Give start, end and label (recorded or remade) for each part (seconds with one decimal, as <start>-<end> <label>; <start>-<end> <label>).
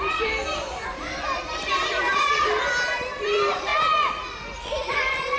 0.0-3.7 remade; 3.7-4.9 recorded; 4.9-5.4 remade